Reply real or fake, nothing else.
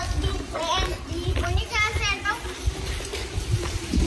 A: real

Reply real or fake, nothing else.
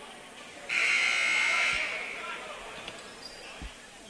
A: real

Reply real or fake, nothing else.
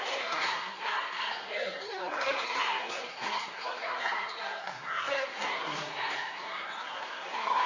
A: fake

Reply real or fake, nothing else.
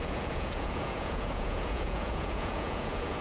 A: fake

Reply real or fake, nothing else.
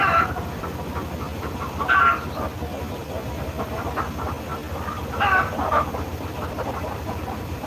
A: fake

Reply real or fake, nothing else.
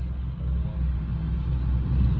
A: real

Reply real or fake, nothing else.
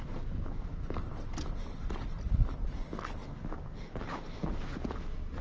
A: real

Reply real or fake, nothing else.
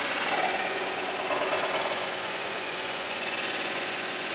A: fake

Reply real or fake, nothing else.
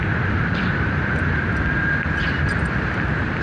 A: fake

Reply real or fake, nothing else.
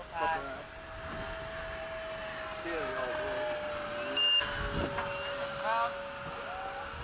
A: real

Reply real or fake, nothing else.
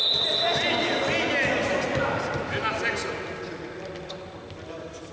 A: real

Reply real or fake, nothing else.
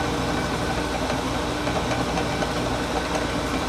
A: real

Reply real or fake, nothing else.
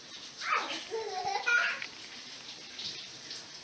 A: real